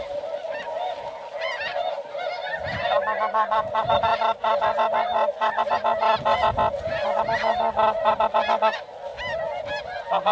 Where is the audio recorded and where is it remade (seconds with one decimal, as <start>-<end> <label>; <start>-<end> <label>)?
0.0-10.3 recorded

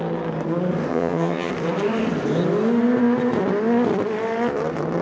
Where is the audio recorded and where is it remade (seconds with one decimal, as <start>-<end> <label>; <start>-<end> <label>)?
0.0-0.9 recorded; 0.9-1.5 remade; 1.5-5.0 recorded

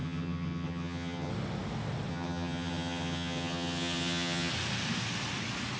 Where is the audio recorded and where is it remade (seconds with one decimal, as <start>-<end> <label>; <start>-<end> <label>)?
0.0-1.3 remade; 1.3-2.1 recorded; 2.1-4.5 remade; 4.5-5.8 recorded

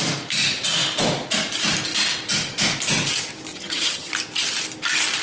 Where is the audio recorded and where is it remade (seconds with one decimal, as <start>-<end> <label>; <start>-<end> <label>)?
0.0-3.5 recorded; 3.5-4.1 remade; 4.1-5.2 recorded

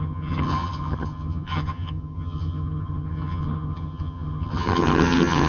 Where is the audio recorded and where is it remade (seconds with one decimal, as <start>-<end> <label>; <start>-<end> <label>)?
0.0-5.5 remade

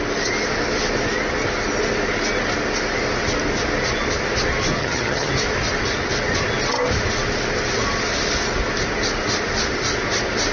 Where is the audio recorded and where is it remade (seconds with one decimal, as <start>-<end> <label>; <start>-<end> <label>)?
0.0-4.8 recorded; 4.8-5.3 remade; 5.3-10.5 recorded

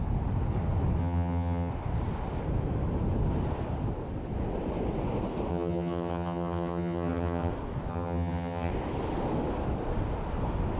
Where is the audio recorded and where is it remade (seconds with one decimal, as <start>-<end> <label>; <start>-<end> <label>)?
0.0-1.0 recorded; 1.0-1.7 remade; 1.7-5.5 recorded; 5.5-7.5 remade; 7.5-7.9 recorded; 7.9-8.7 remade; 8.7-10.8 recorded